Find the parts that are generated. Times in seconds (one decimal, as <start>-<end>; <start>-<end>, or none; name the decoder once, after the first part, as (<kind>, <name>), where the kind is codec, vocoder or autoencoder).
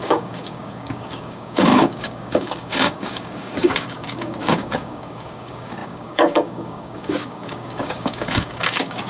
0.0-9.1 (codec, DAC)